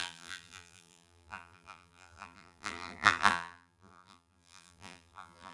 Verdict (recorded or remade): remade